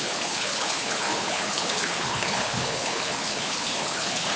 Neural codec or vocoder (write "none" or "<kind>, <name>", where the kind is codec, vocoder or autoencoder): codec, HILCodec